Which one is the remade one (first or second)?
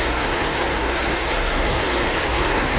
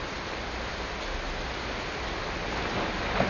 first